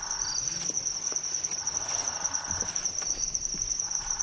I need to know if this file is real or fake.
real